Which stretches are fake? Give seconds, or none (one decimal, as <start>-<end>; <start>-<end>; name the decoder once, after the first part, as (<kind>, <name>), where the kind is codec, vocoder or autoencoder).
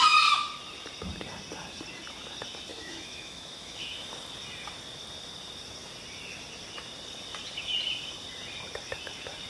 2.7-4.1 (autoencoder, DAC-VAE)